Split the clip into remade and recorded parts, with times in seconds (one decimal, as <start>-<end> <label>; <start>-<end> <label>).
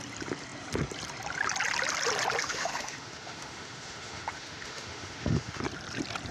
0.0-2.4 recorded; 2.4-5.6 remade; 5.6-6.3 recorded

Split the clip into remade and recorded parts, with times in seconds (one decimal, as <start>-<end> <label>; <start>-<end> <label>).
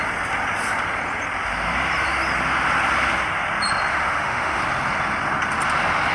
0.0-3.9 recorded; 3.9-4.6 remade; 4.6-6.1 recorded